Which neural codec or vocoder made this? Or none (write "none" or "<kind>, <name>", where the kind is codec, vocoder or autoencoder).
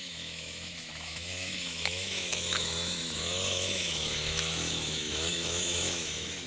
autoencoder, DAC-VAE